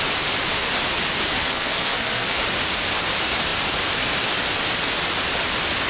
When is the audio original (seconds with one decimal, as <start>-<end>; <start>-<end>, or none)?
0.0-1.4; 2.4-5.9